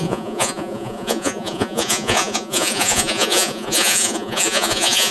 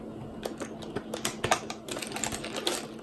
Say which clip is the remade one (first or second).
first